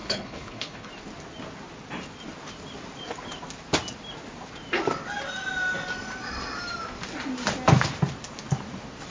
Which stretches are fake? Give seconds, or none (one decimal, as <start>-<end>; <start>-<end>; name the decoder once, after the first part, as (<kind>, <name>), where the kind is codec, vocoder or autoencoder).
0.0-0.9 (codec, HILCodec)